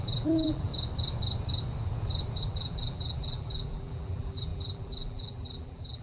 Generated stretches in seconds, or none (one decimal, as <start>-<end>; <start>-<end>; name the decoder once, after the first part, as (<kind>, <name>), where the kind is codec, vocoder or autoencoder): 0.0-0.7 (vocoder, BigVGAN v2); 2.4-6.0